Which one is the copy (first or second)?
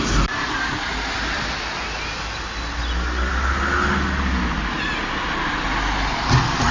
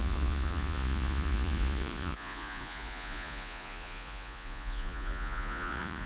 second